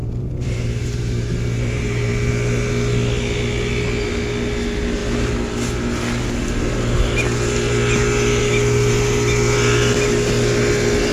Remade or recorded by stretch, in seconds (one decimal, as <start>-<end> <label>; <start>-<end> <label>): 0.0-2.1 remade; 2.1-11.1 recorded